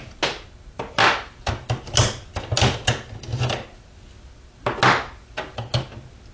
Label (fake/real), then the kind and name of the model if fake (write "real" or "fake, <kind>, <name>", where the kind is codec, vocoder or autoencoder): real